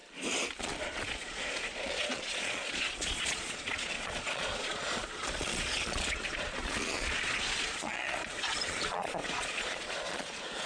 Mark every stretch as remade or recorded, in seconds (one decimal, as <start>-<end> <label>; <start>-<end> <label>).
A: 0.0-0.6 recorded; 0.6-10.7 remade